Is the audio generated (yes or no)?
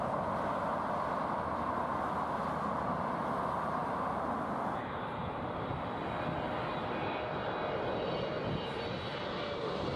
no